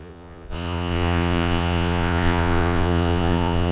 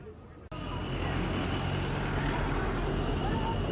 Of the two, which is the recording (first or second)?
second